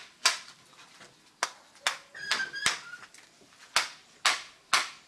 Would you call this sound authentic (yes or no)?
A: yes